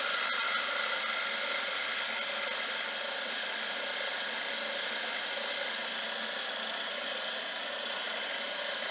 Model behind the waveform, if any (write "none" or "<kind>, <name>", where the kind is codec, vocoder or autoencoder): none